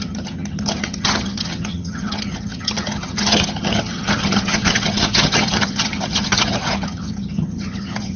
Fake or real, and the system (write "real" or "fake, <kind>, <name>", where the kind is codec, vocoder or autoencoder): fake, vocoder, HiFi-GAN